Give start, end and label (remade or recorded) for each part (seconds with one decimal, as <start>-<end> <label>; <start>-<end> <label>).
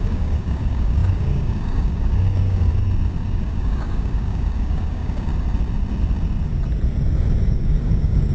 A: 0.0-2.7 remade; 2.7-3.2 recorded; 3.2-5.3 remade; 5.3-7.4 recorded; 7.4-8.3 remade